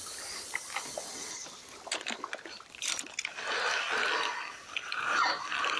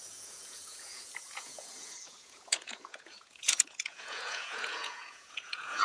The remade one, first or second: second